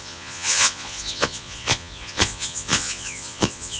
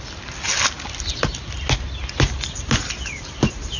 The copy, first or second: first